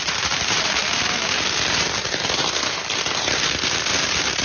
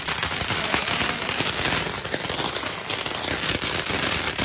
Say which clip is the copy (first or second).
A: first